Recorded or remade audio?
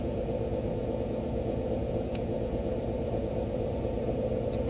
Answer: remade